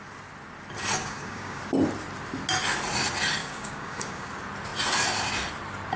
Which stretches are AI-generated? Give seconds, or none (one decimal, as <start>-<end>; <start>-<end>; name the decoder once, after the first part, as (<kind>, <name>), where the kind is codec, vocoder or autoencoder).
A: 1.0-1.6 (codec, DAC); 3.4-4.3